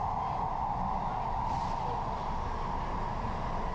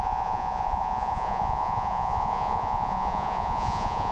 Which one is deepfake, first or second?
second